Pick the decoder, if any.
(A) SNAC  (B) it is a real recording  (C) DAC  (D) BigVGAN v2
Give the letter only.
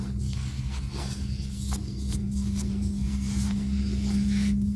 A